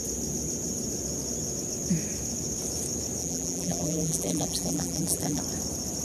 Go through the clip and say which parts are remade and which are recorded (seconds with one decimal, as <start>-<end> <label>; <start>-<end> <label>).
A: 0.0-3.2 recorded; 3.2-5.4 remade; 5.4-6.0 recorded